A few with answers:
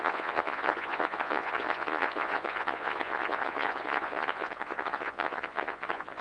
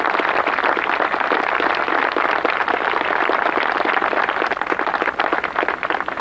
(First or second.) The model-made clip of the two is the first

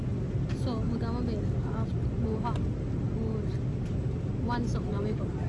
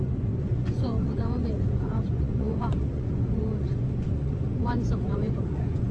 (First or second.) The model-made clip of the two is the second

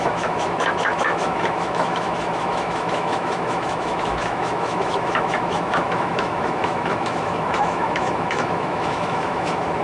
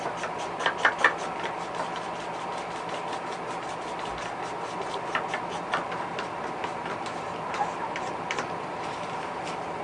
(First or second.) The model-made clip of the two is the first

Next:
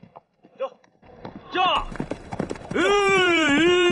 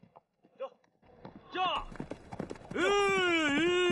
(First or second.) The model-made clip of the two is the first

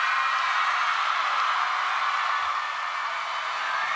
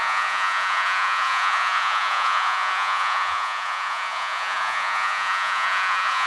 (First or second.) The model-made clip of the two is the second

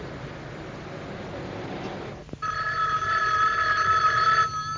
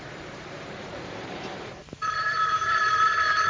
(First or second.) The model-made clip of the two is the second